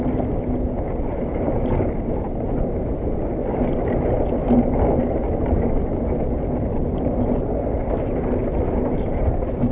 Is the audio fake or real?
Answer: real